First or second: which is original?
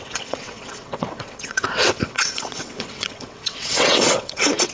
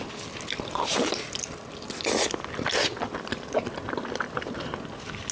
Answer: second